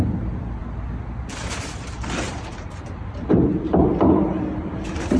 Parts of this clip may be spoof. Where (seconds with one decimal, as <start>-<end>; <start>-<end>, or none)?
none